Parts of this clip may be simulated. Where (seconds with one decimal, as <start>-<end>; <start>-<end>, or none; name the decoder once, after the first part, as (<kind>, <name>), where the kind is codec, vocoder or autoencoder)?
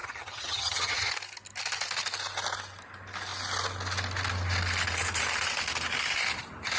0.0-1.1 (vocoder, HiFi-GAN)